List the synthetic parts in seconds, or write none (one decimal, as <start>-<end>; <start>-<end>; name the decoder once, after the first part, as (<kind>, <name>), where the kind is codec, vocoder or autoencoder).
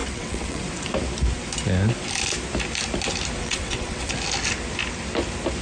0.0-0.6 (vocoder, WaveNeXt); 3.4-4.1